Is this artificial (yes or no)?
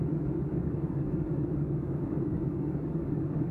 yes